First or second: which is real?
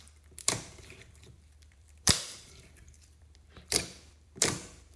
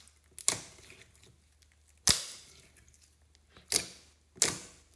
second